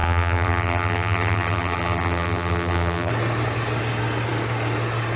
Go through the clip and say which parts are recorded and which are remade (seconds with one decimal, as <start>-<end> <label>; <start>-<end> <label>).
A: 0.0-3.1 remade; 3.1-5.2 recorded